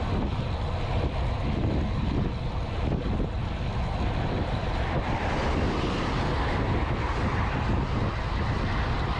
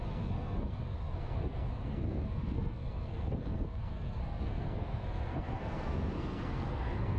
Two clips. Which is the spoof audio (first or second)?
second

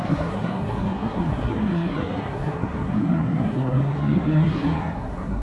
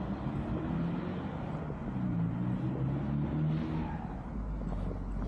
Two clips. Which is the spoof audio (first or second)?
first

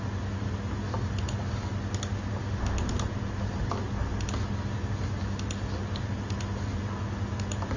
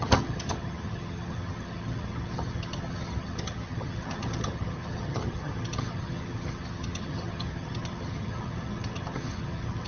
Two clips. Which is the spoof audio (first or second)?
second